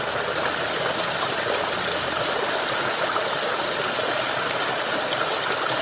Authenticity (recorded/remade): recorded